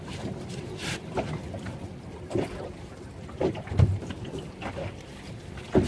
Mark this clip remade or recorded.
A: recorded